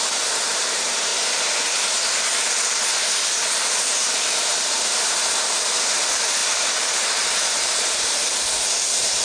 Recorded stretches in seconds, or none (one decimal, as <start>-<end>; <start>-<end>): 1.1-3.7